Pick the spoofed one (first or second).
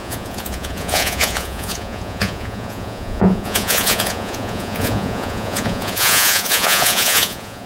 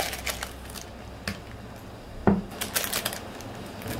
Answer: first